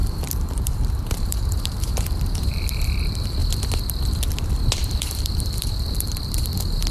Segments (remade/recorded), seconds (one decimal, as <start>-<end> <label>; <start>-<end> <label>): 0.0-3.4 remade; 3.4-4.8 recorded; 4.8-6.9 remade